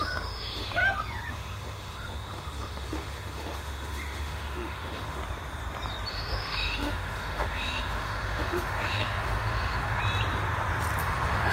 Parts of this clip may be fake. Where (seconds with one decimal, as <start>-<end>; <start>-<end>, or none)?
0.0-0.8; 1.3-5.2; 6.1-10.0; 11.0-11.5